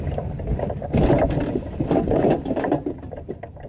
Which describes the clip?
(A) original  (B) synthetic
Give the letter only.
A